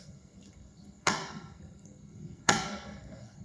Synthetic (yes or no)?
yes